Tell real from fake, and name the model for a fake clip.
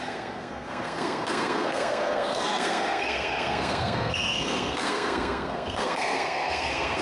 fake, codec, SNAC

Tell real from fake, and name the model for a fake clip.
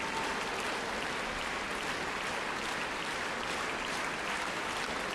real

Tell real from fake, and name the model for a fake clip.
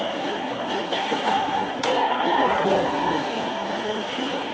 fake, codec, SNAC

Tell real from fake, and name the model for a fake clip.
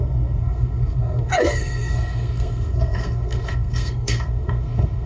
fake, codec, SNAC